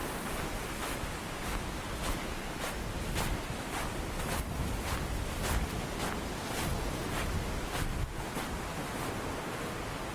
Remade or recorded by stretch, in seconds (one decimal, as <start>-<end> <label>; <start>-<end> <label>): 0.0-10.1 recorded

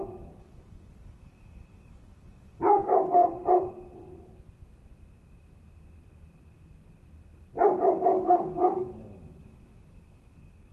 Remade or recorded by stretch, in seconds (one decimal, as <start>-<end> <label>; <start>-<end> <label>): 0.0-3.2 remade; 3.2-7.9 recorded; 7.9-10.7 remade

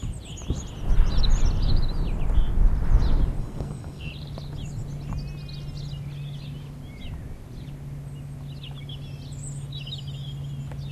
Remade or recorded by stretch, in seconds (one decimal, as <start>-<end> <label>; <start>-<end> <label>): 0.0-3.4 recorded; 3.4-4.1 remade; 4.1-10.9 recorded

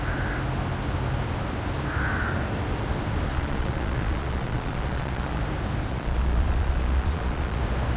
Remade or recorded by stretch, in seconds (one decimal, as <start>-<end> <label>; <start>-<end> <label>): 0.0-3.3 recorded; 3.3-5.4 remade; 5.4-5.9 recorded; 5.9-7.6 remade; 7.6-8.0 recorded

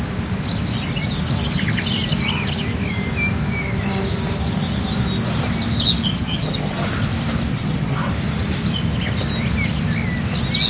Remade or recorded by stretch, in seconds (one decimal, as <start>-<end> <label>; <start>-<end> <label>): 0.0-6.1 recorded; 6.1-6.9 remade; 6.9-7.5 recorded; 7.5-8.1 remade; 8.1-10.7 recorded

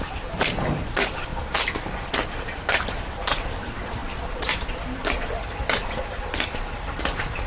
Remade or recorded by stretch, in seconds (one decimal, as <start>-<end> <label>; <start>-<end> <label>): 0.0-1.3 remade; 1.3-2.3 recorded; 2.3-7.5 remade

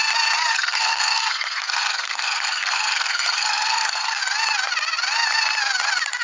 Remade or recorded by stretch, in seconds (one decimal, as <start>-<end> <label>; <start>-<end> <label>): 0.0-0.5 recorded; 0.5-4.2 remade; 4.2-6.2 recorded

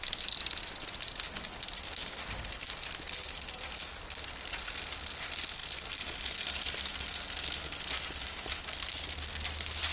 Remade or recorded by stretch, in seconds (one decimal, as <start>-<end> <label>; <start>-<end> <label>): 0.0-9.9 recorded